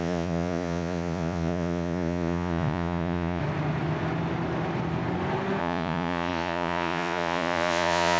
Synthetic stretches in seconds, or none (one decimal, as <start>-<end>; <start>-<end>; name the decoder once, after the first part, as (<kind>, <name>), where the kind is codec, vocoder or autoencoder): 0.0-3.4 (vocoder, Vocos); 5.6-8.2